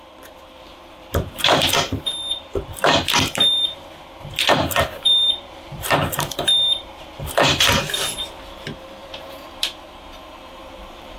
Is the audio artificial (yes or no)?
yes